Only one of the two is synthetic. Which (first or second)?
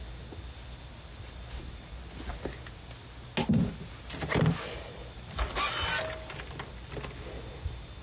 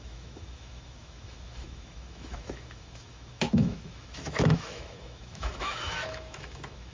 second